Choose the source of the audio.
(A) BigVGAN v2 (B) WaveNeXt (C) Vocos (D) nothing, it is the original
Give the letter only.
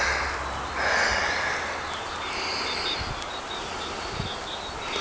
D